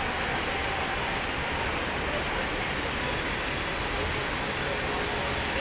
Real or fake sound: real